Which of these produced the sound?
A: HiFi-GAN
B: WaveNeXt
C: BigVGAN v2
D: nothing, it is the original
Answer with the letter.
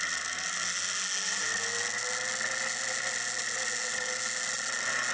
D